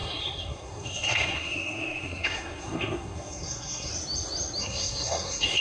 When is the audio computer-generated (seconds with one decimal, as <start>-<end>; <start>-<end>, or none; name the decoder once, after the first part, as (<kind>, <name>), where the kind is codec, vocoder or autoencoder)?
0.0-3.9 (codec, SNAC); 4.6-5.6